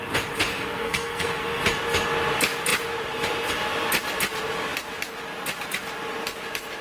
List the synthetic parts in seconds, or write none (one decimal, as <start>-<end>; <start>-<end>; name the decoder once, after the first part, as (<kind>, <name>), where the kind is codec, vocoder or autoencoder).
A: 0.5-1.6 (codec, SNAC)